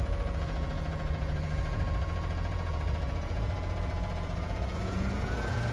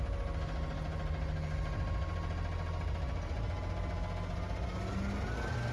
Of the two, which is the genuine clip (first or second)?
second